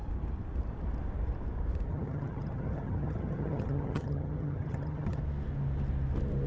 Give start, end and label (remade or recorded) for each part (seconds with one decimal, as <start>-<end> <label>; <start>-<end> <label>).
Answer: 0.0-1.9 recorded; 1.9-5.2 remade; 5.2-6.5 recorded